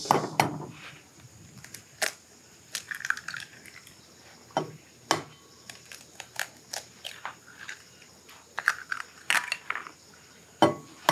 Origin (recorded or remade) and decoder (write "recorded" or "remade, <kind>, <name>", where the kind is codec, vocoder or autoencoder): recorded